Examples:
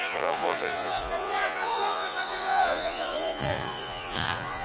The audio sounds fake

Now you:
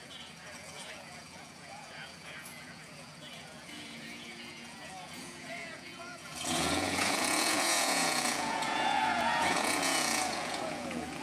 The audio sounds fake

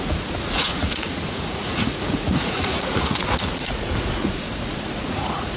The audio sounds fake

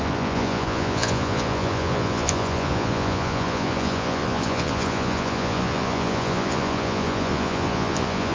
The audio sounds fake